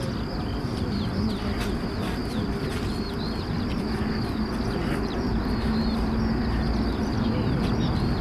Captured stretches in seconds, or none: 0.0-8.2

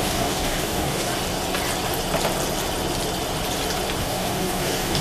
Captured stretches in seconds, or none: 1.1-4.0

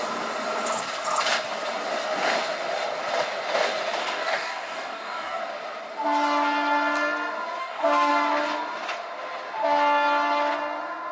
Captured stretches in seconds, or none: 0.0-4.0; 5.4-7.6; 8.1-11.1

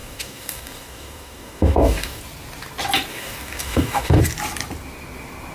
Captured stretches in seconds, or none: 2.2-3.1; 4.2-5.5